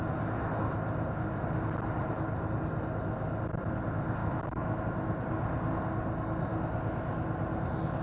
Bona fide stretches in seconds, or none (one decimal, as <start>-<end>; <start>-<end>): 0.0-4.2; 4.8-8.0